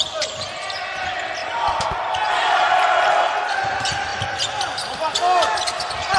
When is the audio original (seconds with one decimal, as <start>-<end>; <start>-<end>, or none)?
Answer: 0.0-6.2